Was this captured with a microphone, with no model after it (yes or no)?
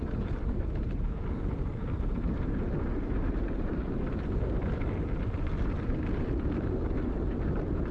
yes